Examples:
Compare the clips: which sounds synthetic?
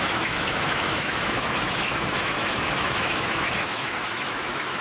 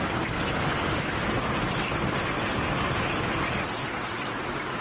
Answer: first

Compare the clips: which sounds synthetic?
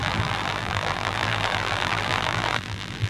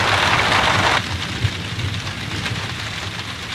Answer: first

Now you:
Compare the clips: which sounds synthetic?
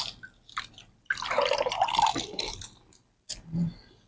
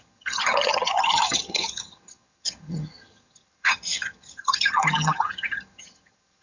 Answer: second